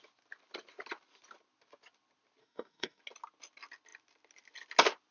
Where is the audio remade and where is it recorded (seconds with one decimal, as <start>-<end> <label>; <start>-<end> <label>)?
0.0-2.4 recorded; 2.4-3.0 remade; 3.0-5.1 recorded